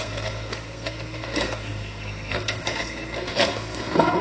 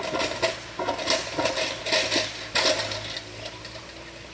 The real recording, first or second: second